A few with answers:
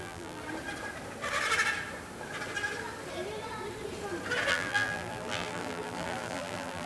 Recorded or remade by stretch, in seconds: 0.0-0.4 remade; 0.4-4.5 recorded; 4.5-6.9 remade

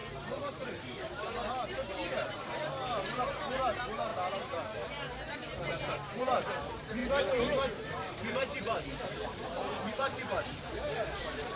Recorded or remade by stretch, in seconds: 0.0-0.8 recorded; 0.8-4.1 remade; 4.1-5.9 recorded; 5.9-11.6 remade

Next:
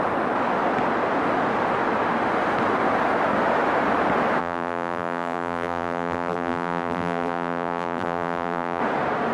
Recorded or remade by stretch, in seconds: 0.0-4.4 recorded; 4.4-8.8 remade; 8.8-9.3 recorded

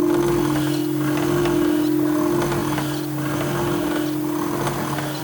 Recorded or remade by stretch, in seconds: 0.0-5.2 recorded